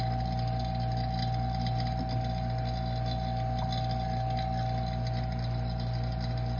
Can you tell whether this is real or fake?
real